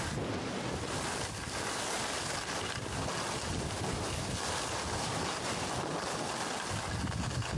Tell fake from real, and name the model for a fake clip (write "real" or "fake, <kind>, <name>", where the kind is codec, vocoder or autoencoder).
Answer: real